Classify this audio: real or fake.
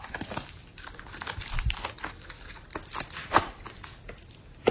real